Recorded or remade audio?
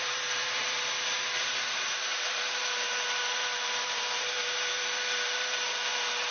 remade